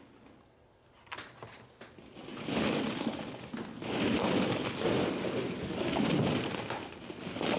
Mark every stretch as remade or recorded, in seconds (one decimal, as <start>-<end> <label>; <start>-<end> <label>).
0.0-7.6 recorded